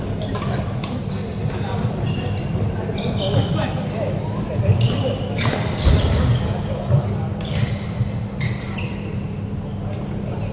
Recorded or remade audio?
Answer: recorded